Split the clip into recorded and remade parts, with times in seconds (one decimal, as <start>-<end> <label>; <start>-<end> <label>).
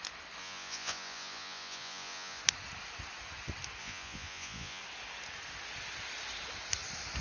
0.0-0.4 recorded; 0.4-2.4 remade; 2.4-3.8 recorded; 3.8-4.8 remade; 4.8-7.2 recorded